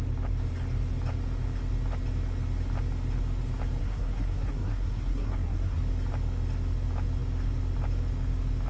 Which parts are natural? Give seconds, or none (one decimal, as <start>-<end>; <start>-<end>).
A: 0.0-3.8; 5.8-8.7